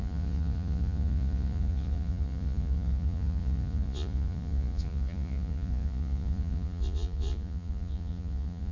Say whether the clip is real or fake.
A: fake